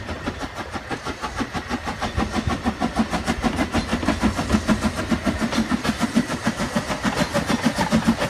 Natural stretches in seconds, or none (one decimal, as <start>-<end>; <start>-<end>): 0.0-8.3